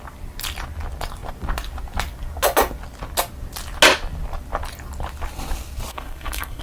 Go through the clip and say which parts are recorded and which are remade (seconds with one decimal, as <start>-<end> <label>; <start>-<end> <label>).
0.0-5.9 recorded; 5.9-6.6 remade